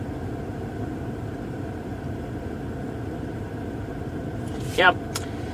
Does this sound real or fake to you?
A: fake